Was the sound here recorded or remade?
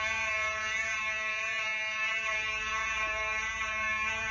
remade